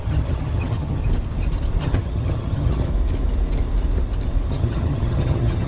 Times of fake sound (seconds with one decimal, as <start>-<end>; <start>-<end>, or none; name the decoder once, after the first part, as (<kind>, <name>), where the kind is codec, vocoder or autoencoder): 0.0-1.0 (vocoder, HiFi-GAN); 1.8-2.9; 4.5-5.7